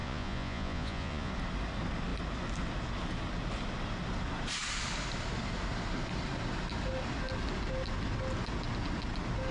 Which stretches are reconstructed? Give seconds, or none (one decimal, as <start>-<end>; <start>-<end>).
0.0-1.3